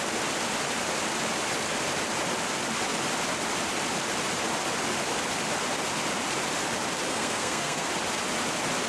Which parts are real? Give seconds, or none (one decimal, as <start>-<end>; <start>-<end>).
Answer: 0.0-7.1; 7.9-8.9